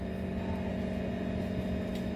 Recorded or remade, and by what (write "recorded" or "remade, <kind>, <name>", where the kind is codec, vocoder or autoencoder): recorded